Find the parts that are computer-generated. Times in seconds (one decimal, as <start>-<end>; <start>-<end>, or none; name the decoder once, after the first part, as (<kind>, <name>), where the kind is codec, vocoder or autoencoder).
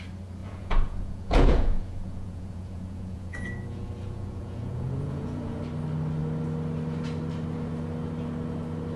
0.4-5.6 (vocoder, Vocos)